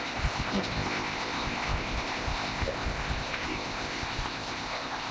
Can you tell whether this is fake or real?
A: fake